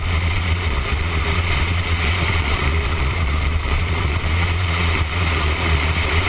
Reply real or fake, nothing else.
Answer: fake